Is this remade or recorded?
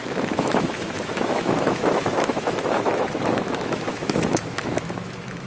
remade